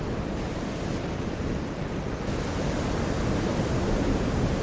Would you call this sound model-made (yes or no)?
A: no